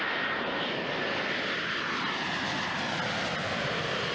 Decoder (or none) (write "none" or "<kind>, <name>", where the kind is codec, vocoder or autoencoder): none